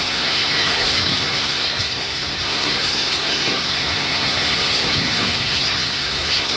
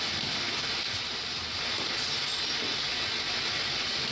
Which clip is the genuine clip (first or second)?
second